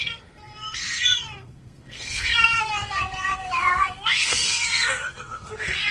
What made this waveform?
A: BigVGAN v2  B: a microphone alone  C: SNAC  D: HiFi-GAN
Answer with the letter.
C